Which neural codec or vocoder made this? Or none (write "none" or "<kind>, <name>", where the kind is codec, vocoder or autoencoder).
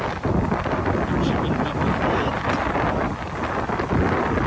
none